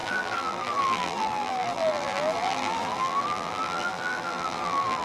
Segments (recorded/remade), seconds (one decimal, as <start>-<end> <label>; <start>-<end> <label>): 0.0-5.0 remade